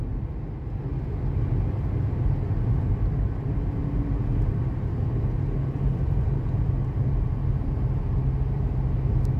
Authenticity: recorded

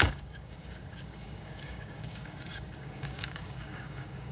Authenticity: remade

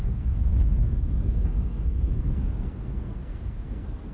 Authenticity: remade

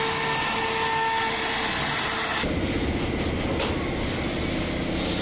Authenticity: recorded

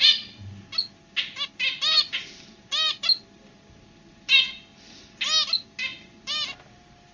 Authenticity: recorded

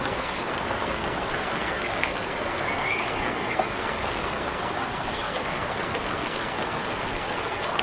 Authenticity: remade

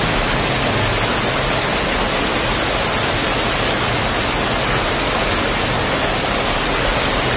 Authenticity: recorded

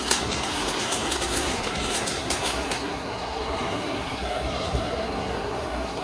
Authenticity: remade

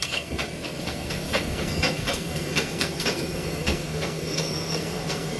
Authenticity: remade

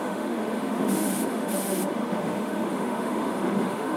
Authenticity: remade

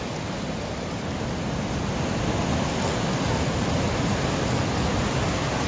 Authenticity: recorded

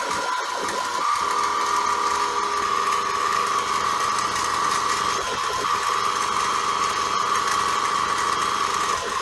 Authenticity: recorded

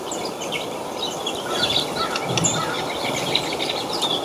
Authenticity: recorded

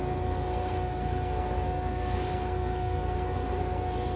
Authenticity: remade